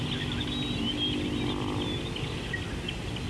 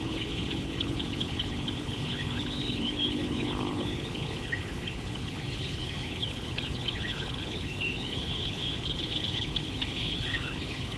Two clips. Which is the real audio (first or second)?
first